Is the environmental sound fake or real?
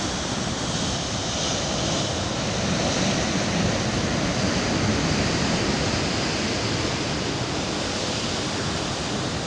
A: real